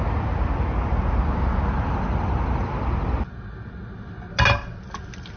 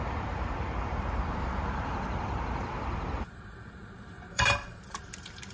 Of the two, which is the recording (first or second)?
first